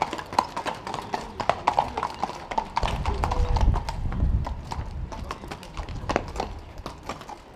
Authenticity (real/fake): real